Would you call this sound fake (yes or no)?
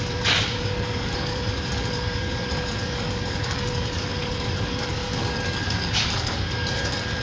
yes